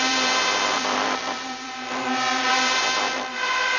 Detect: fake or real fake